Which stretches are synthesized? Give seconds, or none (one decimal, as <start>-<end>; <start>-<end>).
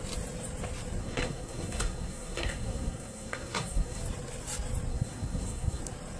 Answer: 1.0-4.0; 4.9-5.8